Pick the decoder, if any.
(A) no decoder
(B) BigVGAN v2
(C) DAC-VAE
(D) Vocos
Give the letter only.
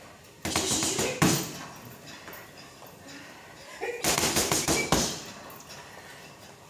A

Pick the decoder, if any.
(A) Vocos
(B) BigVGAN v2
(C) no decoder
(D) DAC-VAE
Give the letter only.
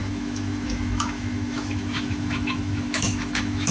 D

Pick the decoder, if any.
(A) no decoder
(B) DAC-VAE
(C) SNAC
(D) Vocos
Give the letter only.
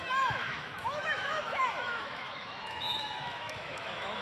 B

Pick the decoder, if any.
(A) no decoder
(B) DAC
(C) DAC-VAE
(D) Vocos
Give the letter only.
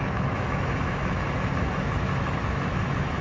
C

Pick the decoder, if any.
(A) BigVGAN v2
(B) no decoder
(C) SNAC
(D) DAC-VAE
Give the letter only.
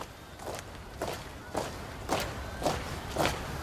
B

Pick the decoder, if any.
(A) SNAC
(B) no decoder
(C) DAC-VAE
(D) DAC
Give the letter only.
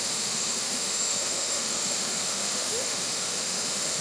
C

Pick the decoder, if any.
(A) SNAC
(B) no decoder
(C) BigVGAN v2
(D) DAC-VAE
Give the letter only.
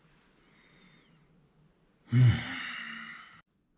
B